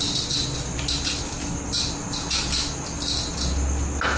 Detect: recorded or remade recorded